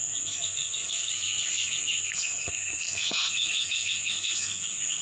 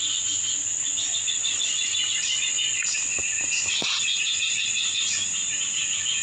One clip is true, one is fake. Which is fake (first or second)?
first